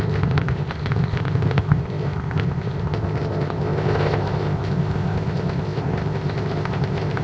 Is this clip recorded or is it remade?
remade